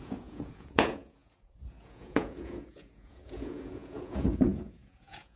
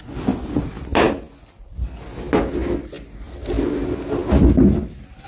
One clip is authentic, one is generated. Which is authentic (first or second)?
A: second